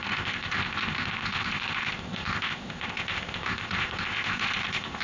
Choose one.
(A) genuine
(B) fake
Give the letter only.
B